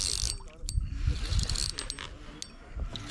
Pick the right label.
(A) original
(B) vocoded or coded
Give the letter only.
A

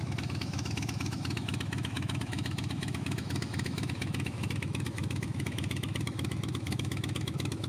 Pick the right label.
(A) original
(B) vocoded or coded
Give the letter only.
B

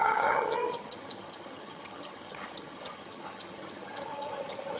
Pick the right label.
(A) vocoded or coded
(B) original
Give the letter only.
A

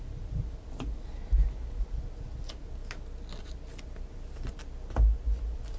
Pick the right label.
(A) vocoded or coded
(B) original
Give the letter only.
B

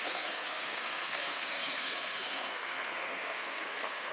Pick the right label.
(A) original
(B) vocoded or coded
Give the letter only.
B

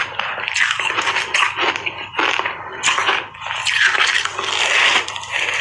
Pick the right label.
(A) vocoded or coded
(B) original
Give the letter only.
B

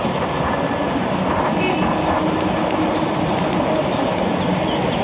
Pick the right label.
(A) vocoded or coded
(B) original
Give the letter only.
B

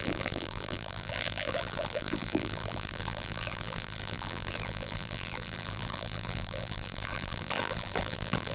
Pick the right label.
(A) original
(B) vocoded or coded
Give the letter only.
B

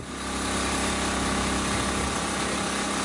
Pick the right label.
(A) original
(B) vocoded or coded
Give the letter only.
A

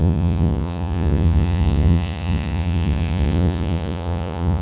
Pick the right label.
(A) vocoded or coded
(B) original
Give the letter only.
A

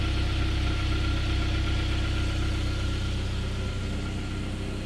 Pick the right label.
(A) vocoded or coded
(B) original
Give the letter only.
B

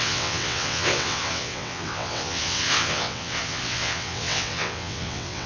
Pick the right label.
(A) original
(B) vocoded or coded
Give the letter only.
B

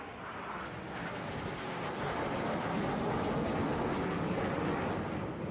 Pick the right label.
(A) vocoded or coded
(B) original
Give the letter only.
B